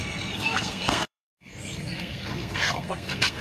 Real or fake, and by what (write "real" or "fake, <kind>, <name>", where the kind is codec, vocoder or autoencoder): fake, codec, SNAC